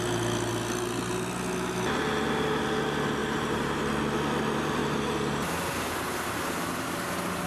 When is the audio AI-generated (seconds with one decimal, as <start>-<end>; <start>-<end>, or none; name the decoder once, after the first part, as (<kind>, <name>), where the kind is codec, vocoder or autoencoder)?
3.2-3.8 (vocoder, BigVGAN v2); 4.8-6.8